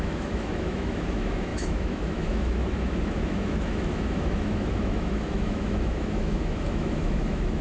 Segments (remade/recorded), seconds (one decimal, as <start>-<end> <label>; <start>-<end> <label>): 0.0-7.6 remade